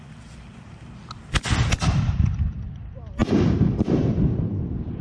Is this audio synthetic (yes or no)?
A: no